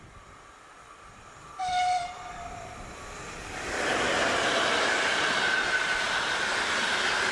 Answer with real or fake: real